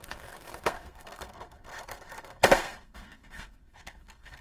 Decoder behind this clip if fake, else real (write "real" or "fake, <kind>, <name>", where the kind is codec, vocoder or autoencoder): fake, codec, SNAC